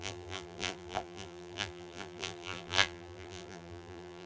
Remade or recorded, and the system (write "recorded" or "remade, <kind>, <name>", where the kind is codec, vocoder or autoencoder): remade, vocoder, BigVGAN v2